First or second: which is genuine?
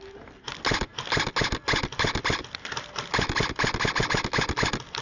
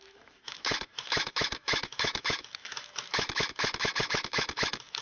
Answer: first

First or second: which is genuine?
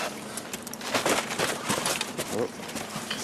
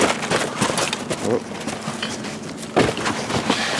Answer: second